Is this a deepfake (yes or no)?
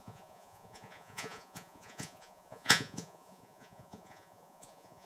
yes